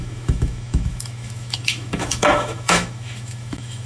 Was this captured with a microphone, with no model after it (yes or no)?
no